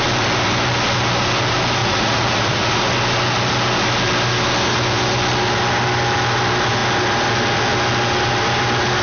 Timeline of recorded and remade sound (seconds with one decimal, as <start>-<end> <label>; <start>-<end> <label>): 0.0-1.8 recorded; 1.8-2.9 remade; 2.9-9.0 recorded

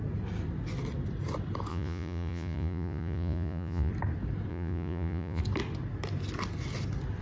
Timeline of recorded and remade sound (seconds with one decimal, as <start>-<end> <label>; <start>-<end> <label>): 0.0-1.7 recorded; 1.7-3.9 remade; 3.9-4.5 recorded; 4.5-5.4 remade; 5.4-7.2 recorded

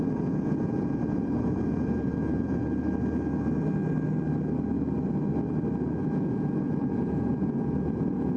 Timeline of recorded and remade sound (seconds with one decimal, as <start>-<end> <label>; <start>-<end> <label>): 0.0-2.6 remade; 2.6-6.0 recorded; 6.0-8.4 remade

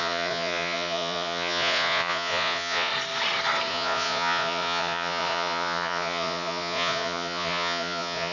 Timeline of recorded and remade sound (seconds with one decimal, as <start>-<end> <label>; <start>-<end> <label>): 0.0-2.9 remade; 2.9-3.7 recorded; 3.7-8.3 remade